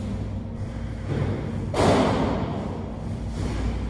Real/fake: real